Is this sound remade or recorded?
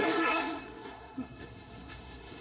remade